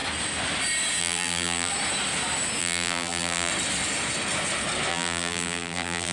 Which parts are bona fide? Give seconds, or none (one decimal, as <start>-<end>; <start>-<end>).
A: 0.0-1.0; 1.7-2.6; 3.5-4.9